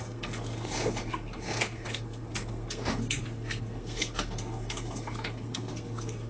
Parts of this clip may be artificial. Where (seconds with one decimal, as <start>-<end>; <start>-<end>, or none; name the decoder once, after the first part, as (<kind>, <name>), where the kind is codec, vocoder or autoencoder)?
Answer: 0.0-6.3 (codec, SNAC)